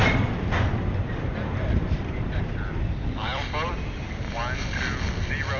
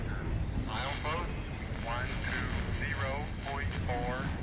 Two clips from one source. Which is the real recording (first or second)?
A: second